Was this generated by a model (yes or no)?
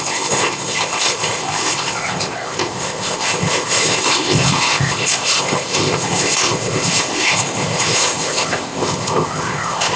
yes